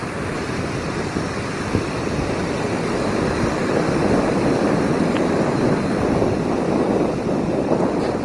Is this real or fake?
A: real